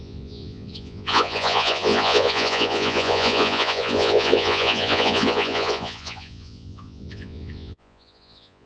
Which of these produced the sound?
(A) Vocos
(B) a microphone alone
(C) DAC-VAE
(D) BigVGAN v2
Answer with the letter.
A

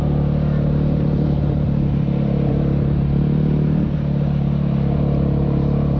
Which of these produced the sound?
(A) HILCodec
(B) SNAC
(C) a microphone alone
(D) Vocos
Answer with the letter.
C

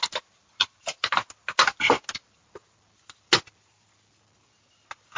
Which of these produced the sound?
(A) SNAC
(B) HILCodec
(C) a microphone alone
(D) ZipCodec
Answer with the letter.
C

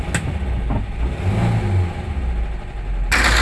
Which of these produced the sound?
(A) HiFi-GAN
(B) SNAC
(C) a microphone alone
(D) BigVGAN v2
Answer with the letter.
C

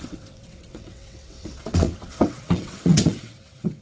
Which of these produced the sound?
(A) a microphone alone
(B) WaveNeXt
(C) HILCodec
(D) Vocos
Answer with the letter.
B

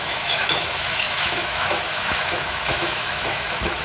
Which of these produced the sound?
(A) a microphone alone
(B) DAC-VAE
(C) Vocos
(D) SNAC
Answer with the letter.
B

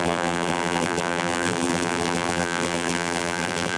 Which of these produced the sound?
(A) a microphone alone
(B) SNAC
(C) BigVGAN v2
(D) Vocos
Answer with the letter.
C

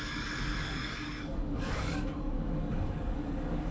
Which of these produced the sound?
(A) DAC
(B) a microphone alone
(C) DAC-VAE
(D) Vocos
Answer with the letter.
A